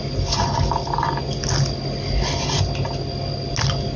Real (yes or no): yes